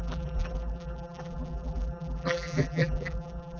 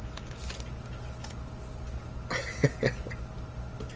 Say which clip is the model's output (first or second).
first